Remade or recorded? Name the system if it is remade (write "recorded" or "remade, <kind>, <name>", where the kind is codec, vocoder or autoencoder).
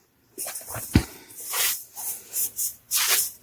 recorded